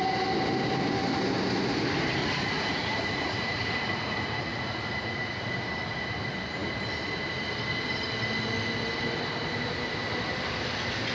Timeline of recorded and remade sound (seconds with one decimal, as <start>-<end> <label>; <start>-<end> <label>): 0.0-2.2 recorded; 2.2-5.4 remade; 5.4-11.1 recorded